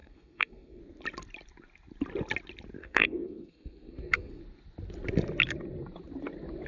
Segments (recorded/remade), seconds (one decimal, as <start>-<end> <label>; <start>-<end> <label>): 0.0-0.8 remade; 0.8-2.8 recorded; 2.8-4.4 remade; 4.4-6.7 recorded

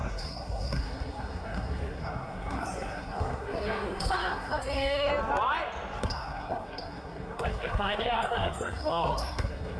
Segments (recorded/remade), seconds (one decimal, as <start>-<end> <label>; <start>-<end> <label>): 0.0-5.1 remade; 5.1-6.0 recorded; 6.0-9.8 remade

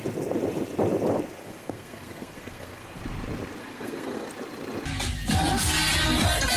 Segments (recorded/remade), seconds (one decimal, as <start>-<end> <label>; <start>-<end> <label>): 0.0-1.4 recorded; 1.4-3.0 remade; 3.0-3.6 recorded; 3.6-4.3 remade; 4.3-6.6 recorded

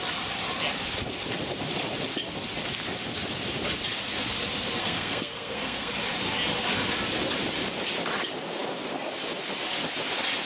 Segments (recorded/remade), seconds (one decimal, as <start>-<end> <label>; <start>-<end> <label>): 0.0-4.8 recorded; 4.8-5.9 remade; 5.9-10.5 recorded